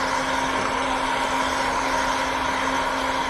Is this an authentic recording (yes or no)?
yes